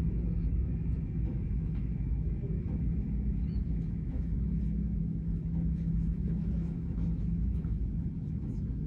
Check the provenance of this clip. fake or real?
fake